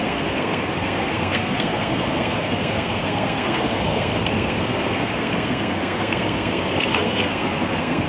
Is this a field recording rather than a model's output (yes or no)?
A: no